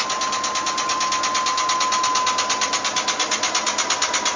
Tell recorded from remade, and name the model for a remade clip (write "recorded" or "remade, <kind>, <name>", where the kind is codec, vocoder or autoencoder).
recorded